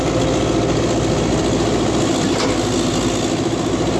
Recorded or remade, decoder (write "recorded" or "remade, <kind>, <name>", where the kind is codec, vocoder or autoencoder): recorded